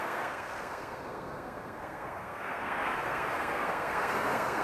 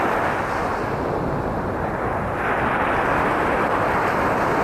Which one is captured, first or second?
second